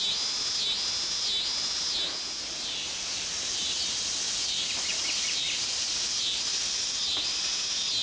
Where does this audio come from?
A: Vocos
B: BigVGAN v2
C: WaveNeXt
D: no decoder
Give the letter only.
D